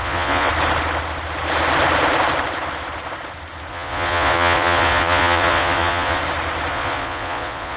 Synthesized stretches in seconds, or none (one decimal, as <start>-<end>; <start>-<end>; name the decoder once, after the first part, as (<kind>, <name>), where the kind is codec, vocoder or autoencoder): 0.0-0.5 (vocoder, Vocos); 3.7-6.2; 6.7-7.8